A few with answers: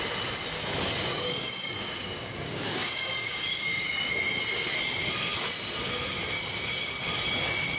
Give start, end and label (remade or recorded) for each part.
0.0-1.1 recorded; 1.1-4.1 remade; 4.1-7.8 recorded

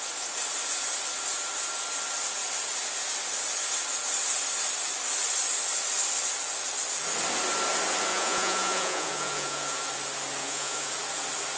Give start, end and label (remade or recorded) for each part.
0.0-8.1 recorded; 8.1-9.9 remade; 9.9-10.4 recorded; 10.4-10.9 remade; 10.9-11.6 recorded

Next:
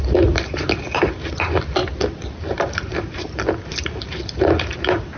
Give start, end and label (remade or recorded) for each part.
0.0-1.8 recorded; 1.8-4.4 remade; 4.4-5.2 recorded